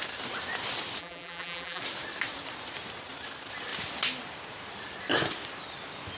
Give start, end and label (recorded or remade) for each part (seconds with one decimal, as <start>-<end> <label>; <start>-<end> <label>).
0.0-1.0 recorded; 1.0-1.8 remade; 1.8-6.2 recorded